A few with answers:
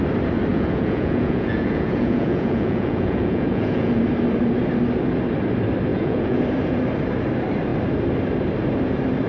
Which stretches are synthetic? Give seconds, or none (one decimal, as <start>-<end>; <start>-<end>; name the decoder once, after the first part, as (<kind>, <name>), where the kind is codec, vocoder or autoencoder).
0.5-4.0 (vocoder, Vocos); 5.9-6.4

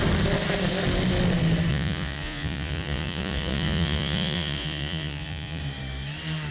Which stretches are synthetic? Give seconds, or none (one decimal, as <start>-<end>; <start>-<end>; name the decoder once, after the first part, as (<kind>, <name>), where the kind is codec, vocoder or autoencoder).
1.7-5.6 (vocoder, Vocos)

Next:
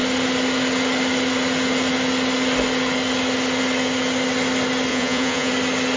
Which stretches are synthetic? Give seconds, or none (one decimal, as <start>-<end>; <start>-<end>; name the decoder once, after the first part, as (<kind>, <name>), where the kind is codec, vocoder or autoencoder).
4.9-5.5 (vocoder, Vocos)

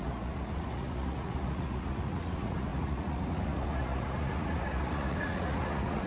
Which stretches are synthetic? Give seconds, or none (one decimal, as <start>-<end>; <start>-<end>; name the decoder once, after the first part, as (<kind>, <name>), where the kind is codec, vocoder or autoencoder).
0.0-6.1 (vocoder, Vocos)